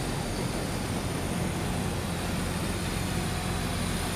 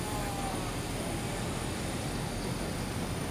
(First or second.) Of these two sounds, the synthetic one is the first